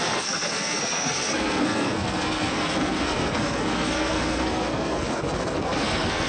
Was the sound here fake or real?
fake